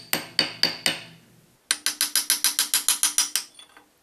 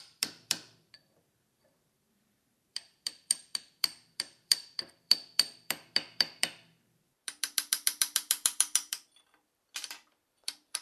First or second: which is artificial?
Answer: second